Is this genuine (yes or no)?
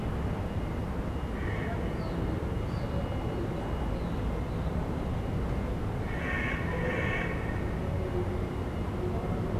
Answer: yes